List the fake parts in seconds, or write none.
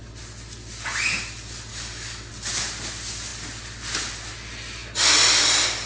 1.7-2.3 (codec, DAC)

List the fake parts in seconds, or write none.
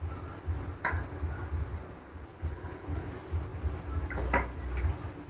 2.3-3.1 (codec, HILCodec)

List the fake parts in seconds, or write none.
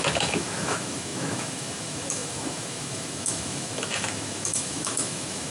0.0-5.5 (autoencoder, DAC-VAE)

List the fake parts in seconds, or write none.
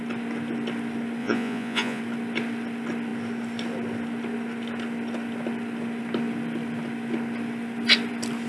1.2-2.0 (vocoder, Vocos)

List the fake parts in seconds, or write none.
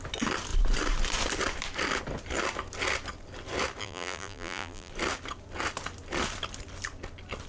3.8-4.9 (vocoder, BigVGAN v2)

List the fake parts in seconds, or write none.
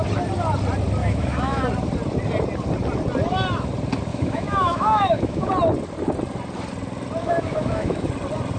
1.0-1.6 (autoencoder, DAC-VAE); 4.1-5.5; 7.2-8.1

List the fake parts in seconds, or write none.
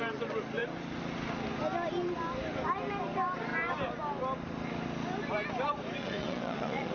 6.0-6.9 (vocoder, Vocos)